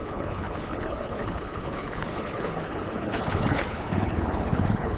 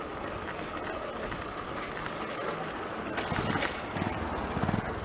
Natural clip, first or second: second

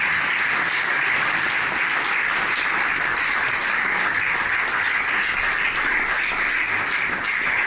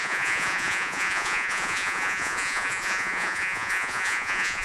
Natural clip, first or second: first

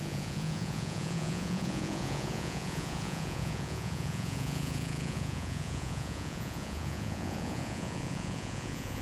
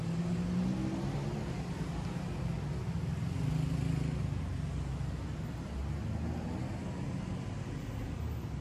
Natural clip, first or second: second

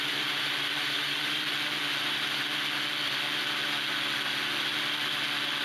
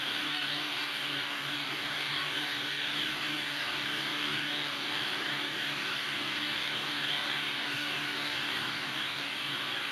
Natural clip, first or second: first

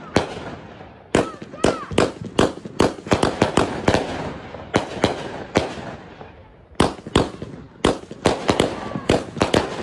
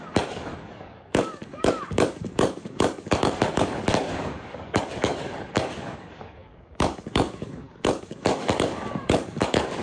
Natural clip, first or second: first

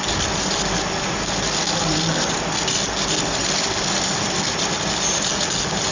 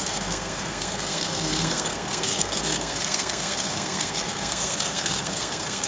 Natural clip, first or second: first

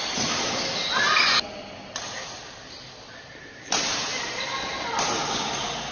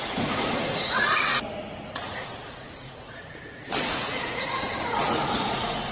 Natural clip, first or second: first